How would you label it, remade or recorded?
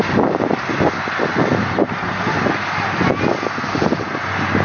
recorded